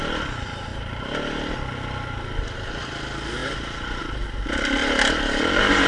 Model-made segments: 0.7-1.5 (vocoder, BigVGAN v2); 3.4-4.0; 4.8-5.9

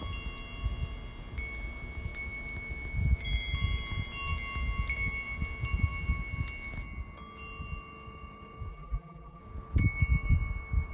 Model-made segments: 8.7-9.4 (vocoder, BigVGAN v2)

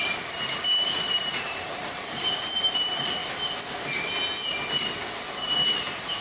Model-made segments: 0.0-3.2 (vocoder, BigVGAN v2)

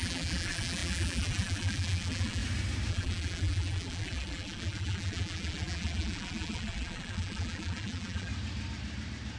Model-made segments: 0.0-2.4 (vocoder, BigVGAN v2); 2.9-8.3

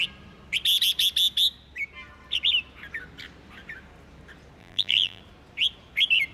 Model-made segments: 4.6-5.2 (vocoder, BigVGAN v2)